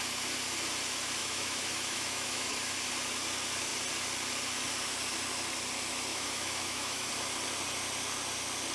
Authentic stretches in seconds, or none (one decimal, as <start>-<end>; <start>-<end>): 0.0-1.2; 2.9-6.1; 7.1-8.7